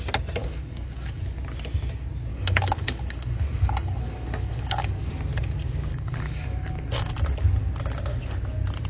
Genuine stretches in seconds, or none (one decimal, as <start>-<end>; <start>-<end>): 0.0-0.4; 1.2-2.3; 5.1-5.9; 7.1-8.9